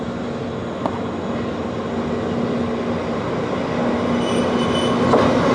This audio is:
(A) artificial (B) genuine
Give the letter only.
B